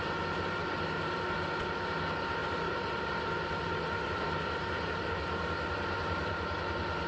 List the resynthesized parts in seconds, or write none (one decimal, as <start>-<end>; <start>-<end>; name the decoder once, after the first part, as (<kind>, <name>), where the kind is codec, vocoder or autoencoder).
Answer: 0.6-1.2 (vocoder, BigVGAN v2); 2.4-6.6